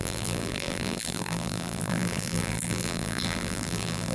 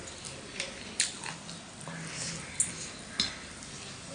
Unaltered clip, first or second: second